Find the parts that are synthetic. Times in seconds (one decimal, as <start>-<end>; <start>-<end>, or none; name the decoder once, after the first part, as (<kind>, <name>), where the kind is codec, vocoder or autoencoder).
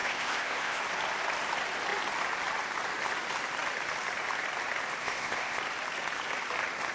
0.0-0.8 (codec, ZipCodec); 5.0-5.6